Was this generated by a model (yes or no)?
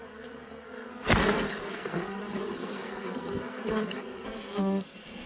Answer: yes